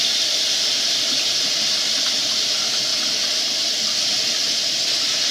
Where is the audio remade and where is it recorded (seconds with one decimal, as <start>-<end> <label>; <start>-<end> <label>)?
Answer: 0.0-5.3 recorded

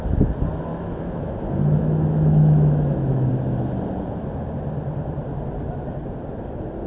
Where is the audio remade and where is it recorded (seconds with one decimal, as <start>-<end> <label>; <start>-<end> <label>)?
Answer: 0.0-0.7 recorded; 0.7-1.3 remade; 1.3-1.8 recorded; 1.8-3.3 remade; 3.3-6.9 recorded